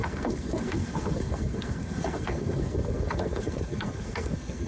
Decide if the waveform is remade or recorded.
remade